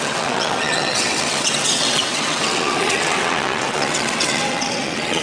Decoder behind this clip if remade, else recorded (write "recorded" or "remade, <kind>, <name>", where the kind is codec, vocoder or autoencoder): remade, vocoder, WaveNeXt